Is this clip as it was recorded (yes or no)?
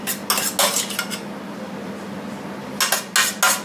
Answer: yes